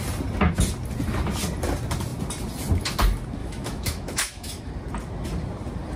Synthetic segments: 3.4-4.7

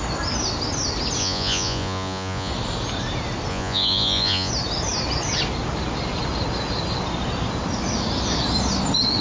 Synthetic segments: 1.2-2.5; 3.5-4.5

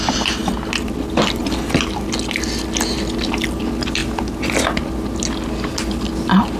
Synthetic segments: none

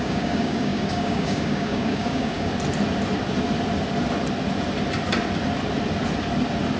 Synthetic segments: 0.0-2.5